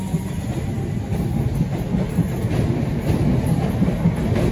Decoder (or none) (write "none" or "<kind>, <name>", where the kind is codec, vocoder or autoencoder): none